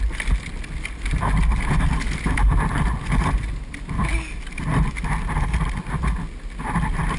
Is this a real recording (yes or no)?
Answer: yes